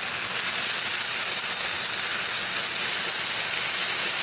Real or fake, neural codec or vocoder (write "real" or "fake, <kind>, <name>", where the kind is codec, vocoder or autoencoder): real